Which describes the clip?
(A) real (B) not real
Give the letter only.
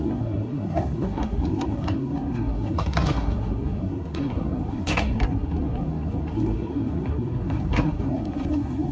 B